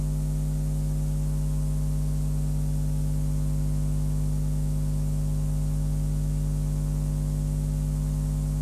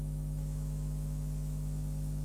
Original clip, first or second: first